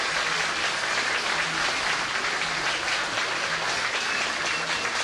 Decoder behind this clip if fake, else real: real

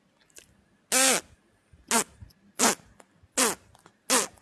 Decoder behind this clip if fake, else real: real